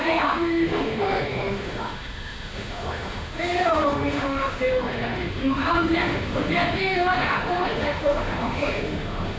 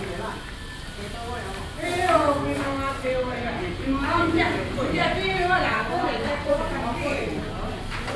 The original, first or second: second